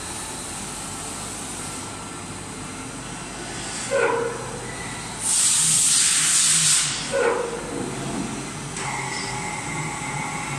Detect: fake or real real